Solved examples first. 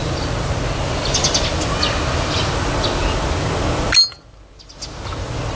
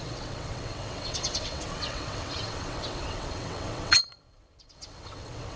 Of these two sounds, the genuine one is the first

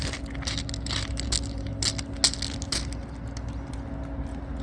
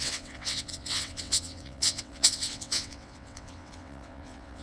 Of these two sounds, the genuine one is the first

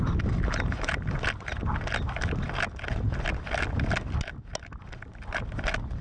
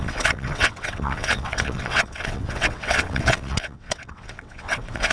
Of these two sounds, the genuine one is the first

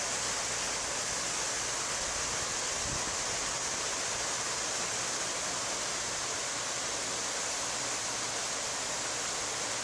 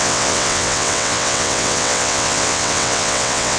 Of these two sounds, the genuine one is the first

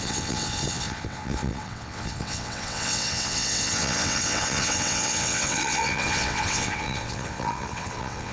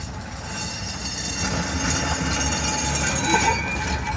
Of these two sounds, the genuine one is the second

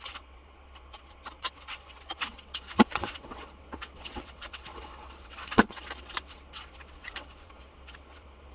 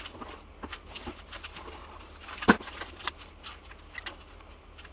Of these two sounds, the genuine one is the second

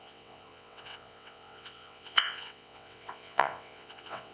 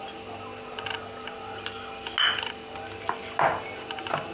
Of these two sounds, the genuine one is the second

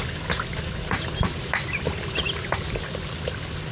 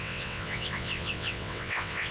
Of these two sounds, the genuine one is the first